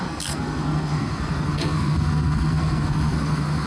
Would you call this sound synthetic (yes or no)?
yes